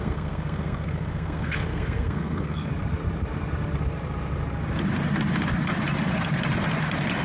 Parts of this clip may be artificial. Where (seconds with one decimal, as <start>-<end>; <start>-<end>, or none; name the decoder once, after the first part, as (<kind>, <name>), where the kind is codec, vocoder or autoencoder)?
0.0-2.7 (codec, SNAC)